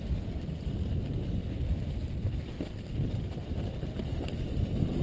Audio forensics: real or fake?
fake